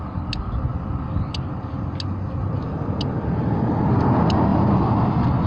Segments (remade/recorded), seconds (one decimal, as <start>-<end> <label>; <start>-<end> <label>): 0.0-5.5 recorded